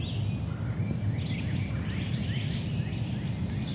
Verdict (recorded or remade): recorded